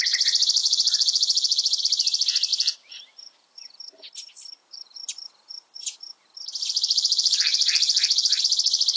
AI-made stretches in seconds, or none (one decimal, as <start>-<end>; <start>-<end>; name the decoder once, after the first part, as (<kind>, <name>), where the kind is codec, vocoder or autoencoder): 0.6-1.8 (vocoder, BigVGAN v2); 2.5-4.0; 4.6-8.4